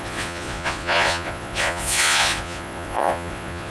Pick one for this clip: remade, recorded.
remade